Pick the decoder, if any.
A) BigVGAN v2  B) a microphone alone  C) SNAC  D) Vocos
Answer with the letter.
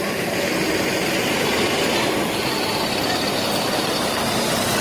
B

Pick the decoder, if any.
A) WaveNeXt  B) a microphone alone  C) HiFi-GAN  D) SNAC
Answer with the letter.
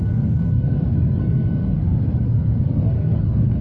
D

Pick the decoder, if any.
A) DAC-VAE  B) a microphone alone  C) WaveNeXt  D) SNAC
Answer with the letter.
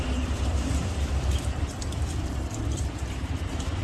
B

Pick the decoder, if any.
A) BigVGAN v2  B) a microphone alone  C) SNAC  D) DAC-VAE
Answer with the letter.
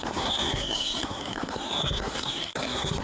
C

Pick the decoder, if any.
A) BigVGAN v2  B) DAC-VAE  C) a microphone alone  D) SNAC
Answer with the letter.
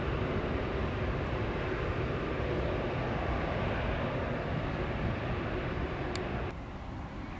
C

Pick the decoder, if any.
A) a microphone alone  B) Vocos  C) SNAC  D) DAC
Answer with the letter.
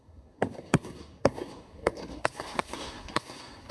C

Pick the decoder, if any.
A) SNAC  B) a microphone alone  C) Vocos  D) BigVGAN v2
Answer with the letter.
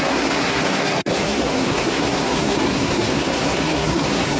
A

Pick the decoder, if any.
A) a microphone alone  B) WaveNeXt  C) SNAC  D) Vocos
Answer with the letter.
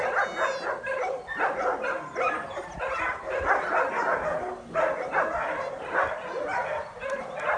A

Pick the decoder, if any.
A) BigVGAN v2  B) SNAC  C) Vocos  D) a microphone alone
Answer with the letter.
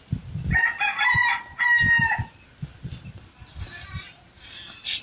D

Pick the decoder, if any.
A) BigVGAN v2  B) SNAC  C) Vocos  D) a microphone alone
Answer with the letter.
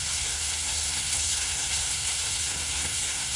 B